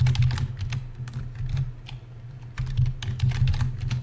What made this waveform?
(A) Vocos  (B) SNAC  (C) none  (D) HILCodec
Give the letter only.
C